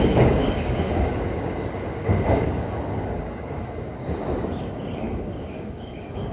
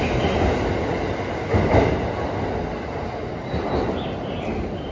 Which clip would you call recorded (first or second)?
second